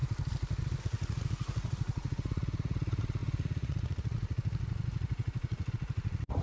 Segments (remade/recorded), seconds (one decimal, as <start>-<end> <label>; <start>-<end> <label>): 0.0-0.8 recorded; 0.8-6.4 remade